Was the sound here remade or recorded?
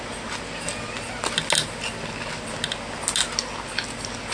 recorded